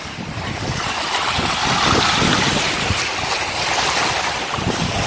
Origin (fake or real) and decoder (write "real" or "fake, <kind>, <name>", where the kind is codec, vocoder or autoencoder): real